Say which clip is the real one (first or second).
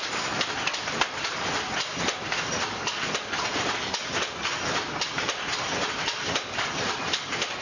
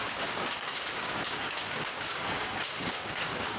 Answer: first